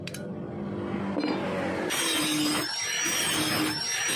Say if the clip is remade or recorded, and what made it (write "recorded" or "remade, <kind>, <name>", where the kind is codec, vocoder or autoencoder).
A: recorded